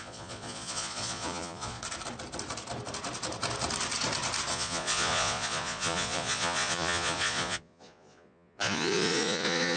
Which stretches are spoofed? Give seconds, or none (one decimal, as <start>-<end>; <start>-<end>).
0.0-1.8; 4.5-9.8